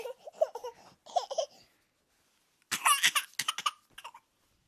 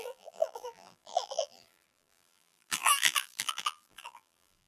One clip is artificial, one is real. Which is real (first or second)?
first